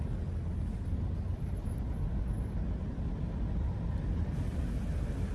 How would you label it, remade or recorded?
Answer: recorded